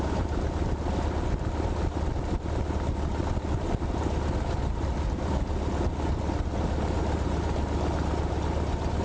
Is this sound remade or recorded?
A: recorded